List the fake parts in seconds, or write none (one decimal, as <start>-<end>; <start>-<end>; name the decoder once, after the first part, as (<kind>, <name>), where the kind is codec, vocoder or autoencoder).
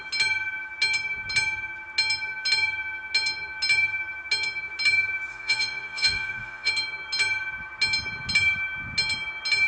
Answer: 5.3-6.7 (vocoder, Vocos)